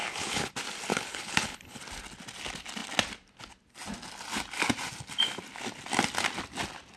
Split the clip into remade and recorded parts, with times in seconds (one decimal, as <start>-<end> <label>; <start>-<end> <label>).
0.0-0.5 remade; 0.5-0.9 recorded; 0.9-1.8 remade; 1.8-7.0 recorded